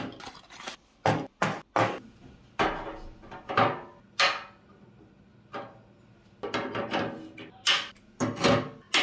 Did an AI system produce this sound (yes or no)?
no